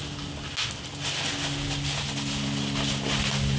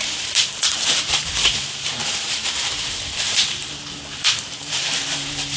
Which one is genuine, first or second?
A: first